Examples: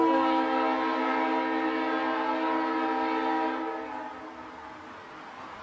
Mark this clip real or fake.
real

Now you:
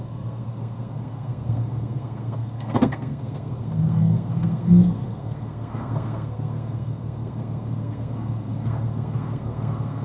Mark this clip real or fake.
fake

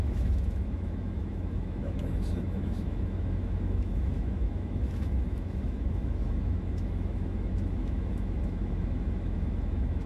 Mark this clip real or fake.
fake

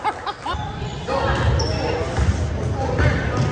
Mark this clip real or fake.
real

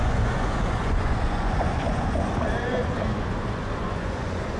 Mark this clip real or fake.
fake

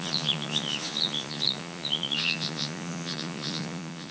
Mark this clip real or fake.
fake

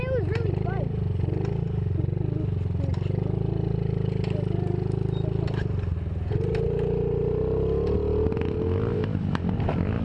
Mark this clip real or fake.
real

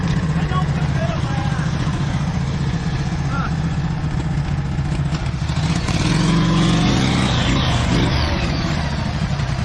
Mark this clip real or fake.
fake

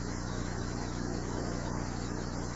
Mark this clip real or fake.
fake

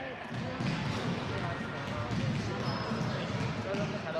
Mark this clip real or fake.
real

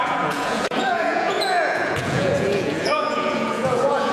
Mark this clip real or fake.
fake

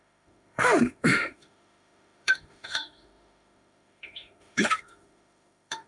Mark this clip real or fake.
fake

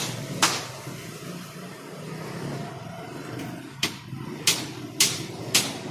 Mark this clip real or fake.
real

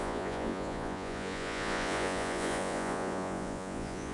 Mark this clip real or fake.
fake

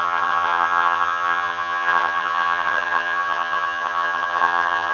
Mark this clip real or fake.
fake